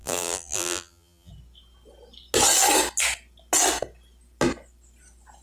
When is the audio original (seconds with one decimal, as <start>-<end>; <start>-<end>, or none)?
1.3-5.4